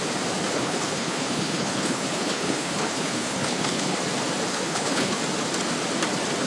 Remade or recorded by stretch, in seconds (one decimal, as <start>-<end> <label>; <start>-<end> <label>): 0.0-0.5 recorded; 0.5-4.0 remade; 4.0-4.5 recorded; 4.5-5.2 remade; 5.2-6.5 recorded